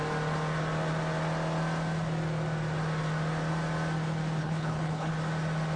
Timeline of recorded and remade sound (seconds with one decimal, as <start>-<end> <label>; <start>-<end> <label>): 0.0-4.4 recorded; 4.4-5.1 remade; 5.1-5.8 recorded